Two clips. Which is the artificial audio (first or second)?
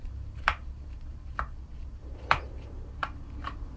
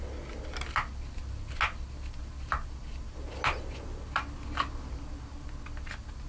first